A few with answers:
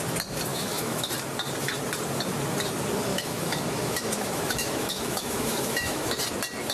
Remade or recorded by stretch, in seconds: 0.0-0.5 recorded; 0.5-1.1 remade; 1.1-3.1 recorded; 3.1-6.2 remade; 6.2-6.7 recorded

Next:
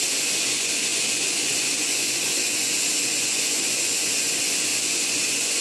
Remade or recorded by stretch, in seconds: 0.0-5.6 remade